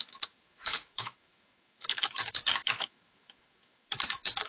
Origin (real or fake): fake